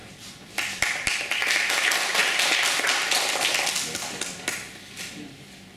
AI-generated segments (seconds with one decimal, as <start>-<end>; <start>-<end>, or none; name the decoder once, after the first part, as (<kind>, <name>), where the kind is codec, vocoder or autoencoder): 0.0-1.7 (vocoder, BigVGAN v2); 2.2-4.7